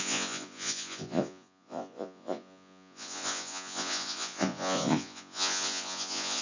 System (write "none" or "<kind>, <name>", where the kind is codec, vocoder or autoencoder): vocoder, Vocos